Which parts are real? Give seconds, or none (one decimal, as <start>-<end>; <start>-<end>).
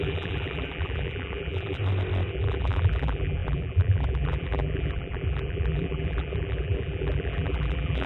1.8-2.3